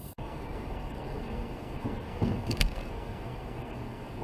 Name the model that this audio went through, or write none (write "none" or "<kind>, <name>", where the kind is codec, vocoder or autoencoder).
codec, SNAC